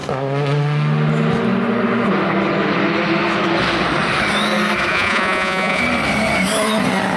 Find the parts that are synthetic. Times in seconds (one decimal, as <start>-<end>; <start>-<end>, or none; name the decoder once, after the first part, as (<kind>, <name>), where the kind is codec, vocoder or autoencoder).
4.9-5.8 (vocoder, Vocos)